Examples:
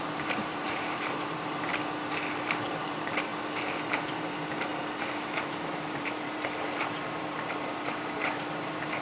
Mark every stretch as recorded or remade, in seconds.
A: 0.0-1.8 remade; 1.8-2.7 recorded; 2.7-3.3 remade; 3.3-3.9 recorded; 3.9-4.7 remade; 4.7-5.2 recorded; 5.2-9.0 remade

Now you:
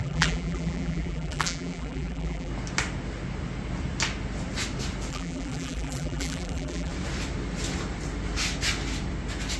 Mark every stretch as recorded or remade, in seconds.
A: 0.0-2.5 remade; 2.5-5.1 recorded; 5.1-6.9 remade; 6.9-9.6 recorded

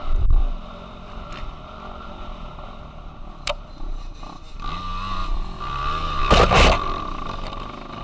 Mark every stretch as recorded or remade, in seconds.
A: 0.0-3.7 remade; 3.7-5.2 recorded; 5.2-5.8 remade; 5.8-8.0 recorded